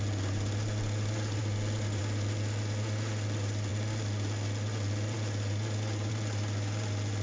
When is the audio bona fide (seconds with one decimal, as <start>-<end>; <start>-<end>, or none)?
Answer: 0.0-7.2

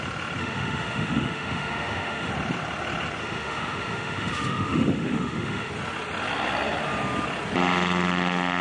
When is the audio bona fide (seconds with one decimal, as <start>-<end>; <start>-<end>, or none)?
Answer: 0.0-0.4; 2.3-3.2; 5.7-8.6

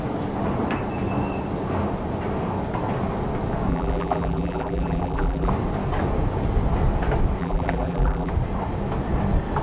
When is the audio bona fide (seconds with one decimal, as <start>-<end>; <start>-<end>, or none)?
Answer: 0.0-3.7; 5.5-7.4; 8.3-9.6

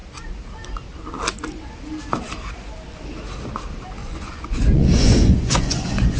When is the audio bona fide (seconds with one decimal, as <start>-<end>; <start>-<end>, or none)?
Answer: 0.0-4.0